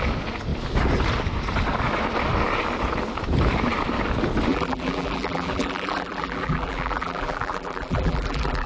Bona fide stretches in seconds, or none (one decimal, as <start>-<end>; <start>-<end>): 0.0-4.5